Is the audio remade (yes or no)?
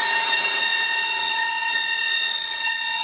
yes